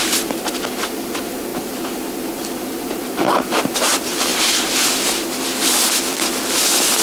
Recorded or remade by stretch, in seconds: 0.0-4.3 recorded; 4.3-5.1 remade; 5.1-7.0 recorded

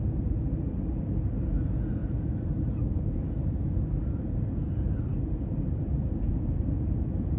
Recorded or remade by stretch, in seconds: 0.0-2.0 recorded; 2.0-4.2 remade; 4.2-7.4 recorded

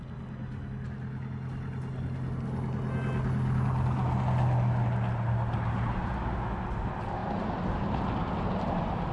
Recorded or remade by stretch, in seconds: 0.0-9.1 recorded

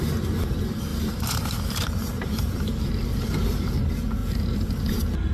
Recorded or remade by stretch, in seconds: 0.0-0.9 recorded; 0.9-2.9 remade; 2.9-4.2 recorded; 4.2-4.7 remade; 4.7-5.3 recorded

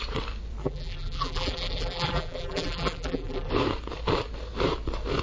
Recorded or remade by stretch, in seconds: 0.0-0.6 recorded; 0.6-3.5 remade; 3.5-5.2 recorded

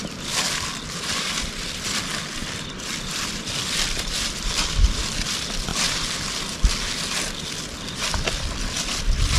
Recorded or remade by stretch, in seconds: 0.0-5.7 remade; 5.7-7.9 recorded; 7.9-9.4 remade